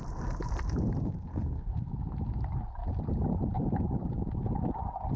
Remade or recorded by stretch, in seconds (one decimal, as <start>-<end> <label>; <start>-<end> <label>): 0.0-1.3 recorded; 1.3-1.9 remade; 1.9-5.2 recorded